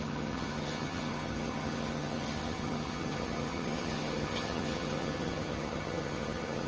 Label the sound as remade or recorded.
remade